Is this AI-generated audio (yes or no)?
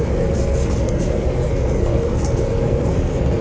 yes